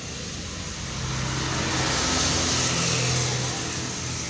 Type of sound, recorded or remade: recorded